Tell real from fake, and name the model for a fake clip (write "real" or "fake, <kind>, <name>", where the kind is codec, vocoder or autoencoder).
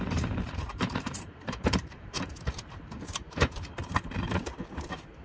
fake, vocoder, BigVGAN v2